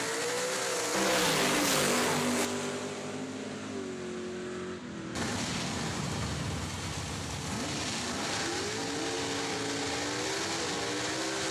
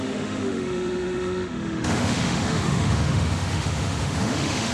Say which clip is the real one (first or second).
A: first